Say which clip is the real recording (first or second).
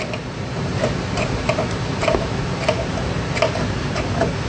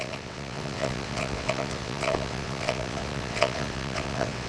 first